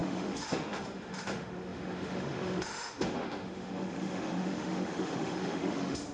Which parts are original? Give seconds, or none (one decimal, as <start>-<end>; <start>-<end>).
none